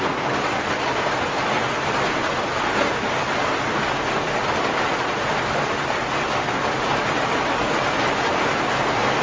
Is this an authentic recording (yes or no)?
yes